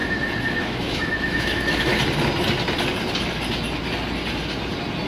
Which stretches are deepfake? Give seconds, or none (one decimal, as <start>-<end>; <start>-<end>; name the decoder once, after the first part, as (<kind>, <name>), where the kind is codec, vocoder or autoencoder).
0.6-1.9 (autoencoder, DAC-VAE)